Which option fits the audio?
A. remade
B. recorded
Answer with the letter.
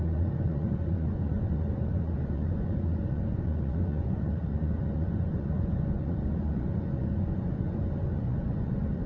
A